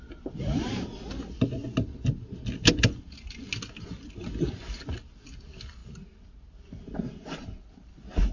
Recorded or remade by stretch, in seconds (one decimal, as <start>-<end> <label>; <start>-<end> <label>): 0.0-8.3 recorded